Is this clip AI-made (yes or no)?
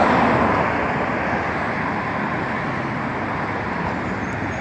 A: no